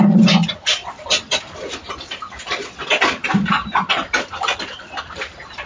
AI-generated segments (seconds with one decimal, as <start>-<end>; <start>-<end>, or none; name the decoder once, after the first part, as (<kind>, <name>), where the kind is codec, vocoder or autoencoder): 0.0-0.8 (vocoder, BigVGAN v2); 4.2-5.7